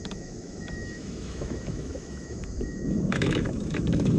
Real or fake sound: fake